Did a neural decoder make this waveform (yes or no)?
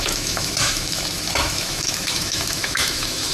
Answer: yes